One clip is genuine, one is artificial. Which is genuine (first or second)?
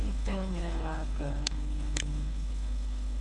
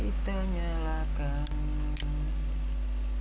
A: second